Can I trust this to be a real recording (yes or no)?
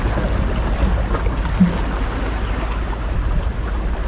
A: yes